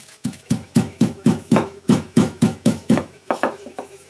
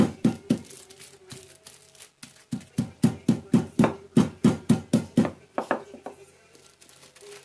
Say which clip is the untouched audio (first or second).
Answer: second